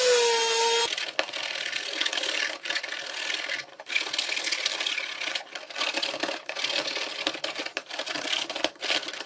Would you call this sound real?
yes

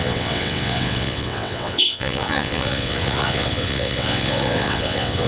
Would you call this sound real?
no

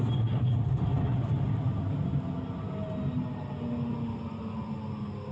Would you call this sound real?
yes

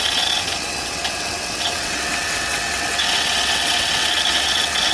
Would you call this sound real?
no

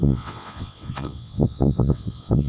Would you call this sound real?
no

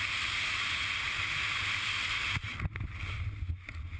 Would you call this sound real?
yes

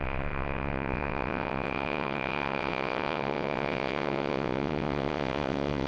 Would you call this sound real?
no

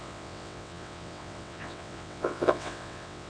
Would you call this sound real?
no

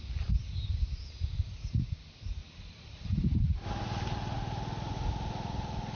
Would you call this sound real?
yes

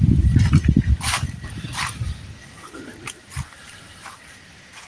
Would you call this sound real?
yes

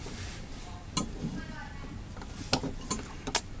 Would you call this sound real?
yes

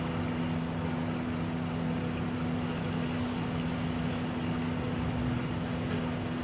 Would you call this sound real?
yes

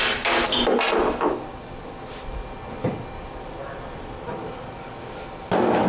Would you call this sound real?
yes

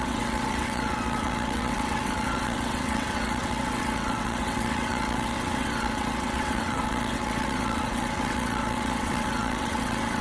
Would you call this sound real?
no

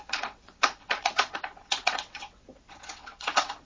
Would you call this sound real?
no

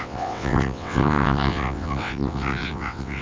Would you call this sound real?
no